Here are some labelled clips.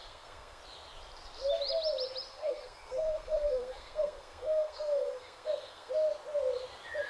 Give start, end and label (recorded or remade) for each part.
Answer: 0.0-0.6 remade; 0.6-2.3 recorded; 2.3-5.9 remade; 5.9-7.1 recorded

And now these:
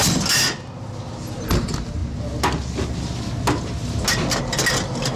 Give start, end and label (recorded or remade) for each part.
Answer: 0.0-5.2 recorded

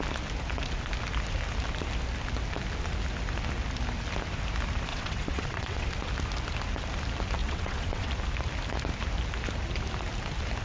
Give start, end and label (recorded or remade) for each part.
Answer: 0.0-4.9 recorded; 4.9-5.9 remade; 5.9-7.4 recorded; 7.4-8.1 remade; 8.1-10.6 recorded